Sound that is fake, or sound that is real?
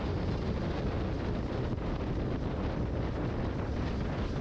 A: fake